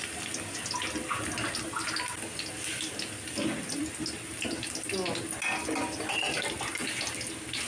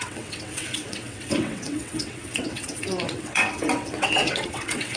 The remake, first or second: second